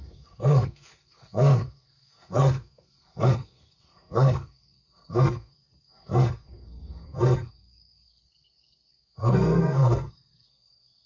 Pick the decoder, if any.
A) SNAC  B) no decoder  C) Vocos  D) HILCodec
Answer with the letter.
A